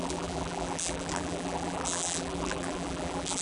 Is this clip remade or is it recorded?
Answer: remade